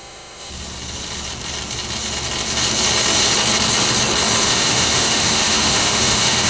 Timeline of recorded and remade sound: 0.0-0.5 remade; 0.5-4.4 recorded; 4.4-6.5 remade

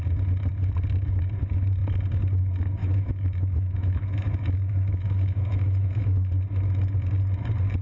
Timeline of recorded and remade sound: 0.0-2.8 recorded; 2.8-6.3 remade; 6.3-7.8 recorded